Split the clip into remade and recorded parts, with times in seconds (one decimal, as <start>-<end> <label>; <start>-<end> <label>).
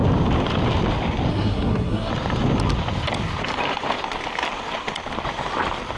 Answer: 0.0-1.3 recorded; 1.3-2.1 remade; 2.1-6.0 recorded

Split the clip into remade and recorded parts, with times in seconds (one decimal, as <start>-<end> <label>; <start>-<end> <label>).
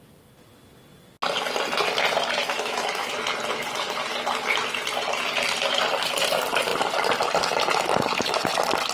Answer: 0.0-2.4 recorded; 2.4-3.1 remade; 3.1-8.9 recorded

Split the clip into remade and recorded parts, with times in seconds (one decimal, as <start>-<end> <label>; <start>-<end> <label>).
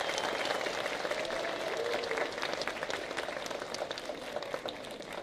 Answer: 0.0-5.2 recorded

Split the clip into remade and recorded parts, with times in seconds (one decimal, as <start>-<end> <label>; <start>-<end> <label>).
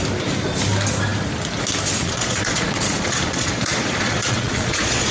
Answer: 0.0-2.0 recorded; 2.0-5.1 remade